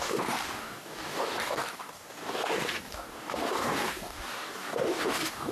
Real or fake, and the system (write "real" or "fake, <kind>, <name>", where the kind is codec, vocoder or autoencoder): fake, codec, DAC